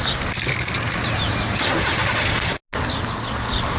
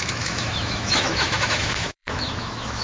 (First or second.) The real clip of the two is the first